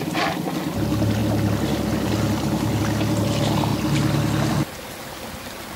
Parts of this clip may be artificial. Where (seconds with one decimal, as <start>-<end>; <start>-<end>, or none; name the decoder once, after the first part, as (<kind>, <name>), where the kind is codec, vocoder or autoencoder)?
none